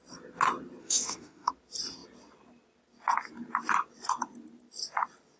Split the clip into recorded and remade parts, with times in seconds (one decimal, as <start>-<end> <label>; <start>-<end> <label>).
0.0-0.8 recorded; 0.8-1.5 remade; 1.5-5.4 recorded